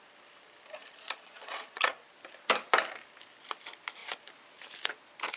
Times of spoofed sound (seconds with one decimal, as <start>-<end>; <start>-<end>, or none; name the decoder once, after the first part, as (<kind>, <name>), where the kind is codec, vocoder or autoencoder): 0.8-1.9 (vocoder, Vocos)